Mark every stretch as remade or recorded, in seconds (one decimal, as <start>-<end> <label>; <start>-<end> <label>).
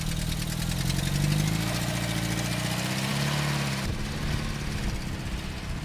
0.0-5.8 recorded